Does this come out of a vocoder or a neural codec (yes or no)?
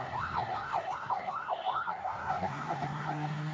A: yes